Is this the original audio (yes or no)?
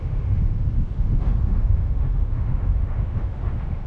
no